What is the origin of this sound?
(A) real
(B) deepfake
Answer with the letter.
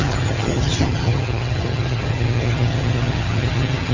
B